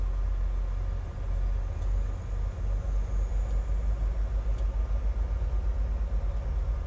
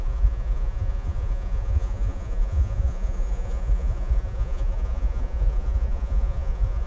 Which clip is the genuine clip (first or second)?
first